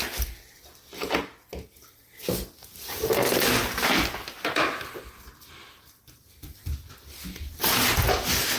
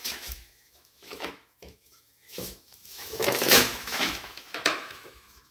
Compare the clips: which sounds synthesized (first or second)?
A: second